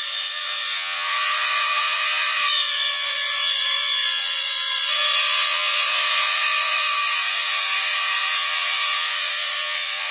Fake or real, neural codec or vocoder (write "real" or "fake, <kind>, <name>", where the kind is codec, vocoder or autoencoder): fake, vocoder, Vocos